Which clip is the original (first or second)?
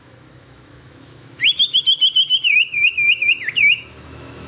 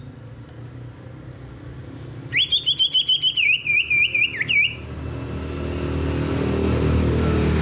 second